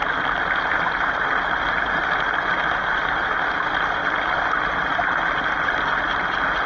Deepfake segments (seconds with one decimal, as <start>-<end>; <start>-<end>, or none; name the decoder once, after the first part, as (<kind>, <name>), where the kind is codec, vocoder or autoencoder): none